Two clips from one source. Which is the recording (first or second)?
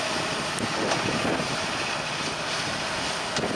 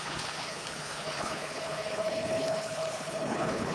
first